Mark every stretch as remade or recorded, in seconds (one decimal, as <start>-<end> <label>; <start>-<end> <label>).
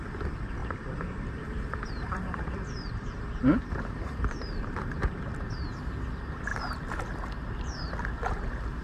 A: 0.0-0.6 recorded; 0.6-5.2 remade; 5.2-8.8 recorded